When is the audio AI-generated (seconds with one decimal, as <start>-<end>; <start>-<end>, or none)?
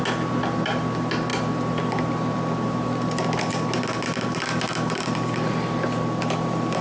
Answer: none